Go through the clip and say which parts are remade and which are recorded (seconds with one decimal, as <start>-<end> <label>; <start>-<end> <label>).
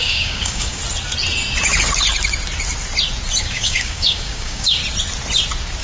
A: 0.0-0.8 remade; 0.8-3.4 recorded; 3.4-4.8 remade; 4.8-5.8 recorded